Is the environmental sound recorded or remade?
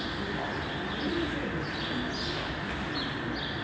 recorded